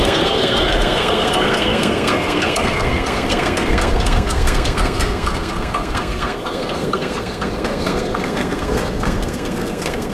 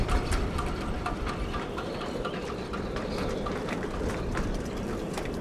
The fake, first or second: first